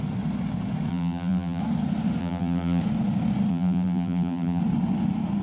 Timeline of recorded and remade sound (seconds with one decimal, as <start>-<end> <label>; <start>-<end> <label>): 0.0-0.9 recorded; 0.9-1.6 remade; 1.6-2.2 recorded; 2.2-2.8 remade; 2.8-3.5 recorded; 3.5-4.6 remade; 4.6-5.4 recorded